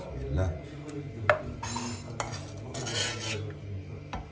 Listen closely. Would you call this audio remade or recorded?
recorded